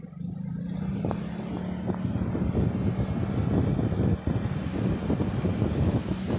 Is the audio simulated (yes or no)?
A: no